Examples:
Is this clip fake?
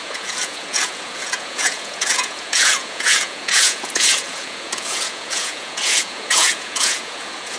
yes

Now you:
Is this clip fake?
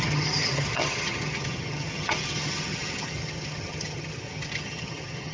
yes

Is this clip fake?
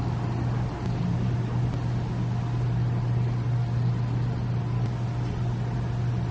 no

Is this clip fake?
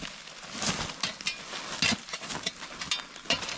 no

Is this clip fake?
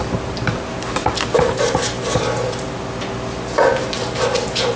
no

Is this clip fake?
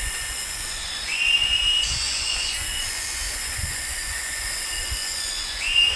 yes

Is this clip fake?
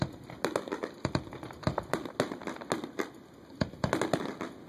no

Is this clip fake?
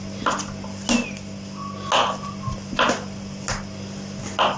no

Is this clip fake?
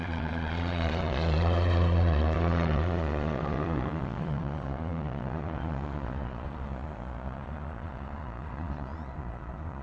yes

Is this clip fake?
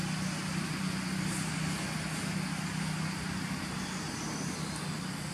no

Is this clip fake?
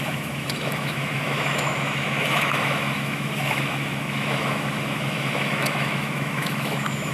yes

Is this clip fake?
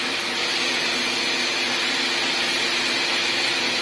no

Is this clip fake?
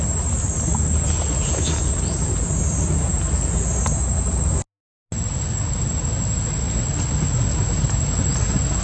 no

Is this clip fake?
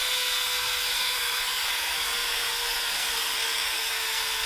yes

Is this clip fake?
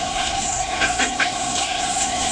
yes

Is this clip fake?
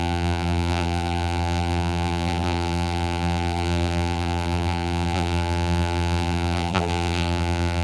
yes